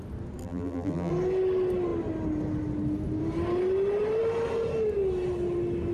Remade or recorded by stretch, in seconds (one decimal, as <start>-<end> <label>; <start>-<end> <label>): 0.0-0.4 recorded; 0.4-1.1 remade; 1.1-5.9 recorded